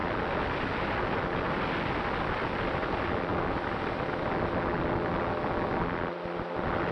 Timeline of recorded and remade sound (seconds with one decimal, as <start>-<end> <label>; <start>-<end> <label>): 0.0-6.9 recorded